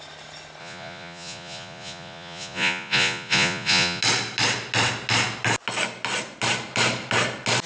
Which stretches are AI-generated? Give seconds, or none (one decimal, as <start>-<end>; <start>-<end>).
0.6-4.0